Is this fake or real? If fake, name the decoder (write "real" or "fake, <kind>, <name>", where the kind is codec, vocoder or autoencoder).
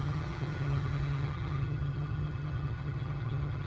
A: fake, vocoder, HiFi-GAN